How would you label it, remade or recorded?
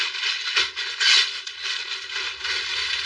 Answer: remade